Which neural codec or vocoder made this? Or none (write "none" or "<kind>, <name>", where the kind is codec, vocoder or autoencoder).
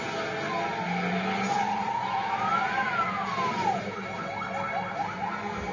none